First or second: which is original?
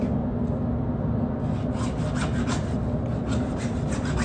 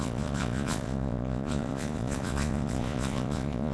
first